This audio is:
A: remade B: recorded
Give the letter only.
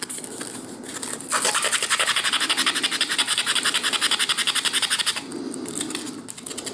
B